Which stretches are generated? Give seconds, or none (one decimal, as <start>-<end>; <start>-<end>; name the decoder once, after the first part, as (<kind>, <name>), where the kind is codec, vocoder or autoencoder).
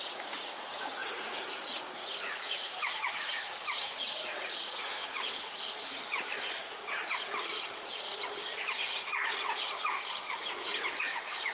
0.0-11.5 (vocoder, Vocos)